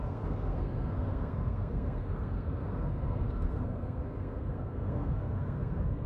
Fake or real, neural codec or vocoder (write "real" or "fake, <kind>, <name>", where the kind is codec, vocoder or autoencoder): fake, codec, SNAC